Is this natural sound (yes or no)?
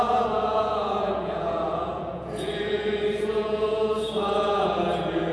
no